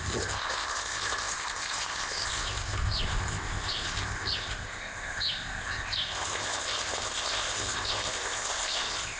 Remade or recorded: remade